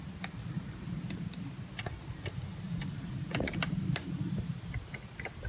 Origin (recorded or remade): recorded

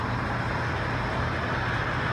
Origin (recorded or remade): recorded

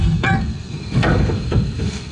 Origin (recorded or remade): remade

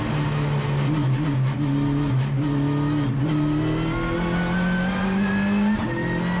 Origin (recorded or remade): recorded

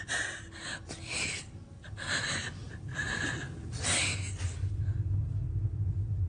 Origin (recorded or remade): recorded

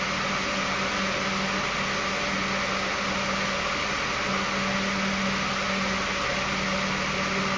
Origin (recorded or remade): recorded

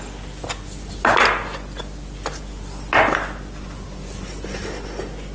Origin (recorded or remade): recorded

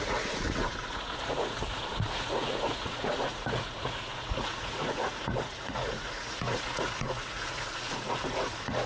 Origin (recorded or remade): remade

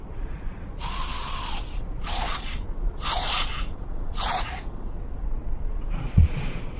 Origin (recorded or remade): remade